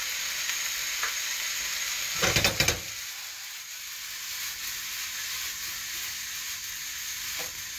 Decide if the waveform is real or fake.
real